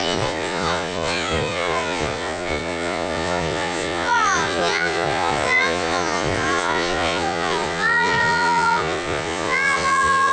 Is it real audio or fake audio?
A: fake